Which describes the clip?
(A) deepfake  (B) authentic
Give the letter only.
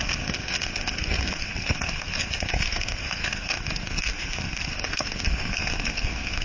A